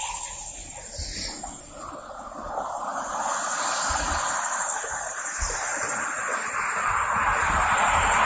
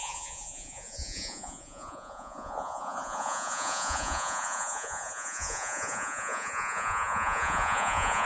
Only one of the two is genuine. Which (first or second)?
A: first